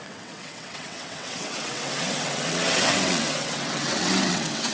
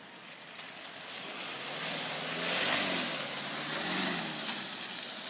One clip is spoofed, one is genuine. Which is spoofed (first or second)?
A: first